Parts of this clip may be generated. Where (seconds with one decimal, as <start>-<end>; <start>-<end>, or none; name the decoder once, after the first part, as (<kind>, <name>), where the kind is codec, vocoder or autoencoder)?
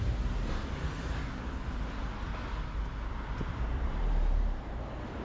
0.0-1.2 (vocoder, BigVGAN v2); 1.7-2.3; 3.1-5.2